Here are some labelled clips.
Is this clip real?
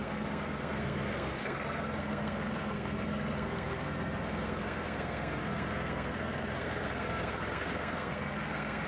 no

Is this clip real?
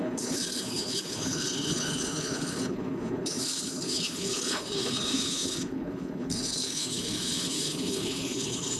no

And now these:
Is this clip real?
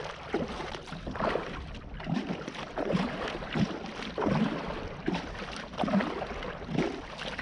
yes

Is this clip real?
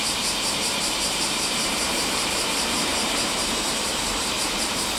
no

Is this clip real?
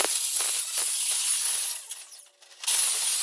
yes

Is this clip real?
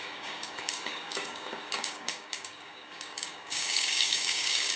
no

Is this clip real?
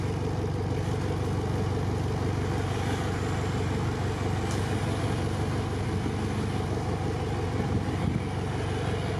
yes